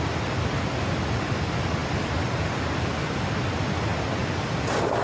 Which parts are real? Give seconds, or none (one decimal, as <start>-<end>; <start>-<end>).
0.0-1.8; 3.2-5.0